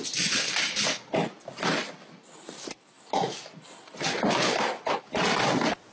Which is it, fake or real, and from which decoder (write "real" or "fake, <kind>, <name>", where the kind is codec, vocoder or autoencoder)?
real